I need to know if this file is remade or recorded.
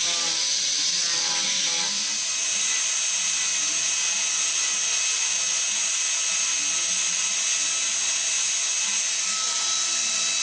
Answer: recorded